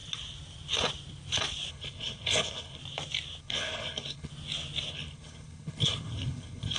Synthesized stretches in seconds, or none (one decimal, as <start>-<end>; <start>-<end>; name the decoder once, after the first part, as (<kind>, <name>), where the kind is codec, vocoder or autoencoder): 1.7-2.8 (codec, HILCodec); 3.4-4.3; 4.9-6.8